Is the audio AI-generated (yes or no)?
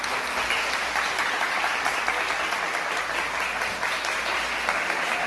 no